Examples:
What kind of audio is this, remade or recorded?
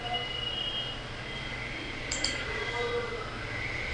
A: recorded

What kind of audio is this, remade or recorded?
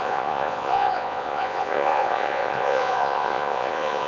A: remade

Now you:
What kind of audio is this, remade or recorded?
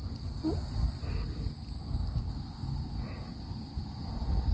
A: recorded